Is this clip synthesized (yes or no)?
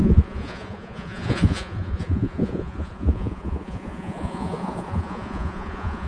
yes